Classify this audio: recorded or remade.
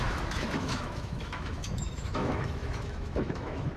remade